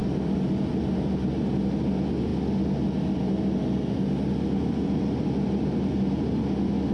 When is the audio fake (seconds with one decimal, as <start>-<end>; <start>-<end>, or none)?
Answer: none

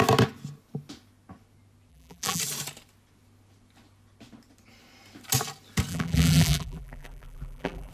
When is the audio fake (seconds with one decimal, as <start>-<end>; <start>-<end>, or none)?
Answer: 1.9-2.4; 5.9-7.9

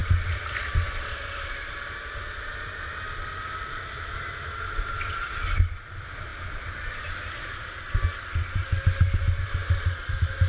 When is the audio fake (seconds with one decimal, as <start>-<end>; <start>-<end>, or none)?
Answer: none

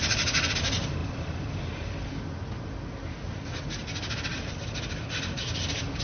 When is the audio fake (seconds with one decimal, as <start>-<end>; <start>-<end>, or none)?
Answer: none

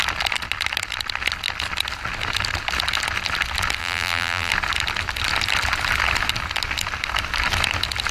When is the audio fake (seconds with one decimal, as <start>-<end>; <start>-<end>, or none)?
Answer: 3.8-4.5

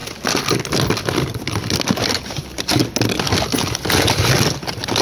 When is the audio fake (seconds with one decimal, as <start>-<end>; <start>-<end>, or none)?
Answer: 2.1-2.8; 4.6-5.0

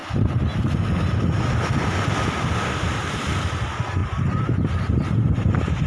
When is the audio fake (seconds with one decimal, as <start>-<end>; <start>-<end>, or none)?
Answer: 3.5-5.9

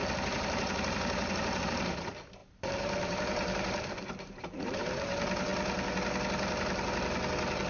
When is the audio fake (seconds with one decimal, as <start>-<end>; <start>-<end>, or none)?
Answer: 0.0-5.5